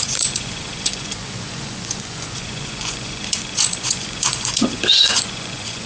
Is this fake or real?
fake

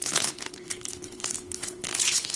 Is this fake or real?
fake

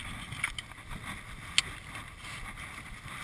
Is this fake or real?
real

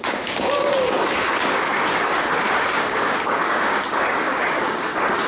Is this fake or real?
fake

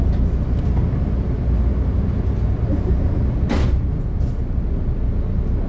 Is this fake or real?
real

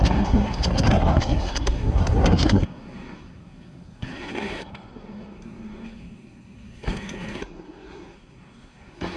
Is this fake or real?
fake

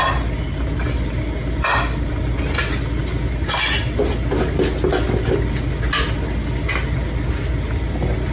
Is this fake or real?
real